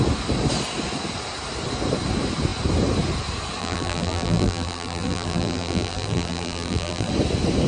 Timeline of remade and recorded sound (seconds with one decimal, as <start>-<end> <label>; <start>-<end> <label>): 0.0-3.6 recorded; 3.6-7.1 remade; 7.1-7.7 recorded